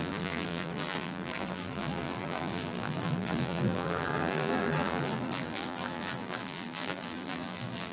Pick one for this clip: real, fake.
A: fake